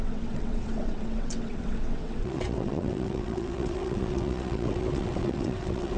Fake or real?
fake